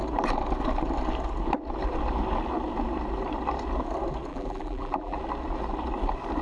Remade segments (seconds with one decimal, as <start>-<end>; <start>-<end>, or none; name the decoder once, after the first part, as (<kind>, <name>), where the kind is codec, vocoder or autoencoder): 4.3-5.2 (vocoder, BigVGAN v2)